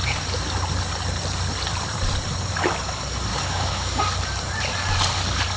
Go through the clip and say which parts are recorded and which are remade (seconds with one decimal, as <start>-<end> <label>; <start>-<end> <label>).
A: 0.0-3.3 recorded; 3.3-4.0 remade; 4.0-5.6 recorded